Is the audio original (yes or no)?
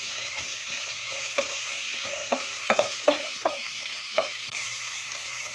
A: no